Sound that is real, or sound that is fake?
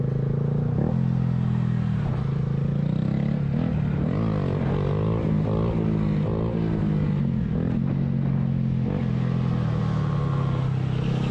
real